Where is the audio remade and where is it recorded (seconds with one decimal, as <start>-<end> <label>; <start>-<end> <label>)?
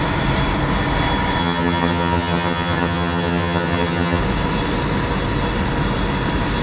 0.0-1.4 recorded; 1.4-4.2 remade; 4.2-6.6 recorded